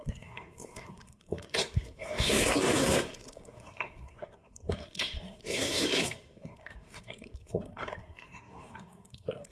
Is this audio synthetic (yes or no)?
yes